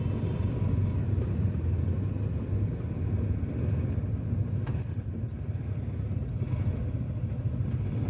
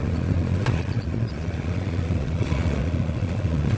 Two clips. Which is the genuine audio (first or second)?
first